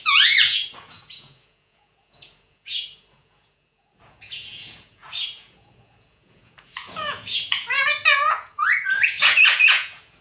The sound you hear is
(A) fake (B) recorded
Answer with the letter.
A